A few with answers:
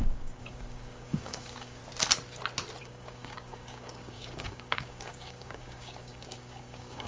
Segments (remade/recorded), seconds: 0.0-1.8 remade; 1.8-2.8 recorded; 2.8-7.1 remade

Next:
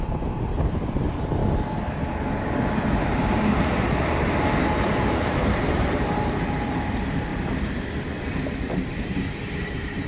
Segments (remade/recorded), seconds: 0.0-1.4 remade; 1.4-2.9 recorded; 2.9-7.3 remade; 7.3-9.6 recorded; 9.6-10.1 remade

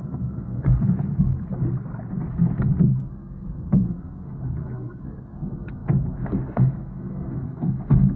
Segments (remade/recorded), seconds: 0.0-1.3 remade; 1.3-2.1 recorded; 2.1-8.2 remade

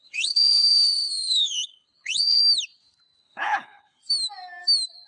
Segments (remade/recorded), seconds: 0.0-2.4 remade; 2.4-3.2 recorded; 3.2-4.0 remade; 4.0-5.1 recorded

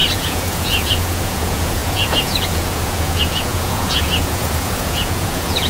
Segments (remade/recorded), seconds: 0.0-5.7 remade